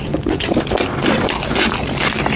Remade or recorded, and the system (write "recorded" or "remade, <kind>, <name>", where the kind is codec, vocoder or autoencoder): recorded